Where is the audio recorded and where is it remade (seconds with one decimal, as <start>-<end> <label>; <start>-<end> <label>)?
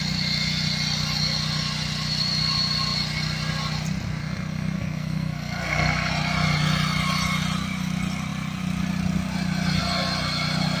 0.0-4.2 recorded; 4.2-6.1 remade; 6.1-10.8 recorded